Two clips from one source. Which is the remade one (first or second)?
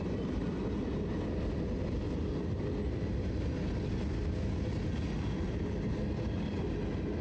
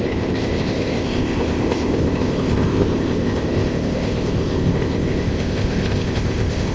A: second